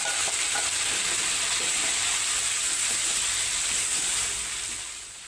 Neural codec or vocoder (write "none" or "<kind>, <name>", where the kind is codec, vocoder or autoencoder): none